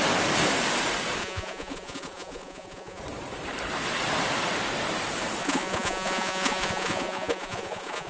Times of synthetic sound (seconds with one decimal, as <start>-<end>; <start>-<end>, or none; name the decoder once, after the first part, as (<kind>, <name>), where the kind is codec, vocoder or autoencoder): 1.2-3.0 (vocoder, Vocos); 5.4-8.1